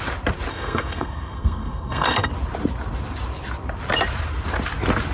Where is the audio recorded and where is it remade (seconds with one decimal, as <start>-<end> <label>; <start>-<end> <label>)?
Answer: 0.0-0.5 recorded; 0.5-2.3 remade; 2.3-5.1 recorded